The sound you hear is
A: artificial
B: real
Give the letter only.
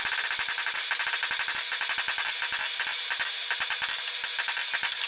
B